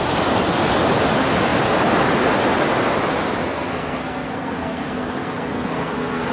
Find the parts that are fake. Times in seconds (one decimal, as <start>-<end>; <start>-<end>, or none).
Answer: 3.4-6.3